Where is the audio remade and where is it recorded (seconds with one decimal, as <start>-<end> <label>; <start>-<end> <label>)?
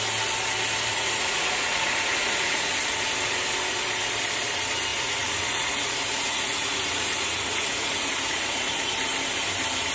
0.0-0.9 recorded; 0.9-2.7 remade; 2.7-4.9 recorded; 4.9-8.9 remade; 8.9-9.9 recorded